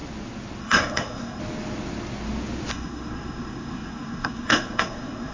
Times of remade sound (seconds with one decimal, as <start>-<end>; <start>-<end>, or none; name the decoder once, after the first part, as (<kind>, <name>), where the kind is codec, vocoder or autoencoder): 0.6-1.4 (codec, SNAC); 2.7-5.3